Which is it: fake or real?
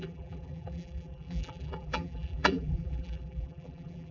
fake